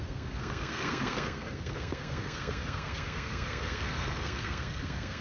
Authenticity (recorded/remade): remade